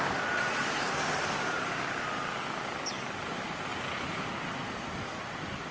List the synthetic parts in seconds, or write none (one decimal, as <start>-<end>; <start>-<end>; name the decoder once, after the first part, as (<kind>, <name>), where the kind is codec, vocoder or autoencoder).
none